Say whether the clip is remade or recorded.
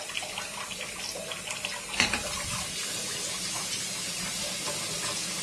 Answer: recorded